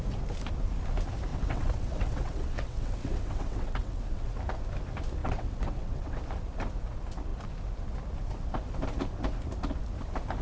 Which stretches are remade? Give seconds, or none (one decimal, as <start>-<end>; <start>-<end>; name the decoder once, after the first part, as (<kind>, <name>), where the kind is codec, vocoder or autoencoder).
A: 1.3-4.3 (vocoder, WaveNeXt); 5.2-6.2

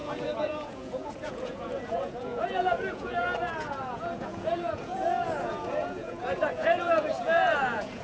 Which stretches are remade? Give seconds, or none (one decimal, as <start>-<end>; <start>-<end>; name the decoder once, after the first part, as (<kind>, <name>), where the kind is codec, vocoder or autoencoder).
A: 0.0-8.0 (vocoder, Vocos)

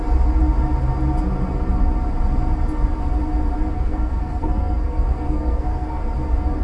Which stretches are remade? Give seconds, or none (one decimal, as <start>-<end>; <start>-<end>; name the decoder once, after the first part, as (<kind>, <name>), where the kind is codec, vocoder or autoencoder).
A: 3.7-6.0 (codec, SNAC)

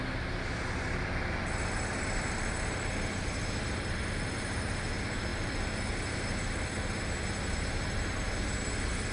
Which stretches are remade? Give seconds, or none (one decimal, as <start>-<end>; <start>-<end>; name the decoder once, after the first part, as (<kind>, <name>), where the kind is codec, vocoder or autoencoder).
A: none

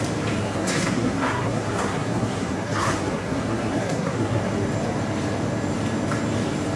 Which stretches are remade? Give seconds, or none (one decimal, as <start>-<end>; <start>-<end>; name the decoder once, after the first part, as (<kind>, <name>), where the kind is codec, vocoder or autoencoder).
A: 0.4-4.5 (codec, SNAC)

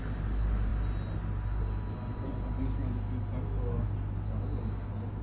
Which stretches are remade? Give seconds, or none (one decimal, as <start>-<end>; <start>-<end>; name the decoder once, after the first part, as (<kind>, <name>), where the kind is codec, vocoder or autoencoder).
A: none

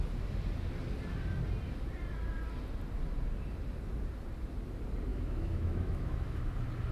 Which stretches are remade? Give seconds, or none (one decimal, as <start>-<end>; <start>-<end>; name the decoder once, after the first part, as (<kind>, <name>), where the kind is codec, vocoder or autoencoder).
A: 5.1-6.4 (autoencoder, DAC-VAE)